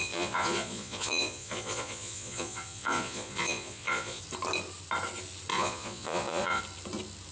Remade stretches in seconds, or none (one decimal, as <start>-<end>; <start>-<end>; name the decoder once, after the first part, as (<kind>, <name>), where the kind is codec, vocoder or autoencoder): 0.0-4.2 (vocoder, Vocos); 5.5-6.6